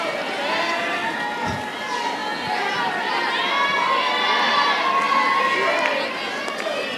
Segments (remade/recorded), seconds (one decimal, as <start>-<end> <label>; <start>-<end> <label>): 0.0-7.0 recorded